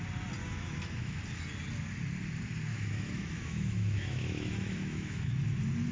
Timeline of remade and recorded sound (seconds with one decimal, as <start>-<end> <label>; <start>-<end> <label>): 0.0-0.4 recorded; 0.4-1.2 remade; 1.2-2.7 recorded; 2.7-5.3 remade; 5.3-5.9 recorded